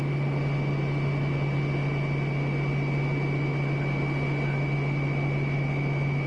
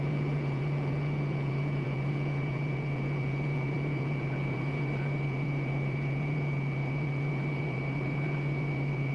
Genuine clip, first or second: first